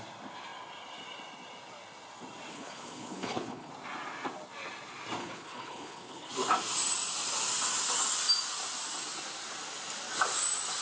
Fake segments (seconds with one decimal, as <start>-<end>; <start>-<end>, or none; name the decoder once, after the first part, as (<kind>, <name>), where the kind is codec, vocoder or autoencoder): 2.5-3.7 (codec, HILCodec); 5.2-6.3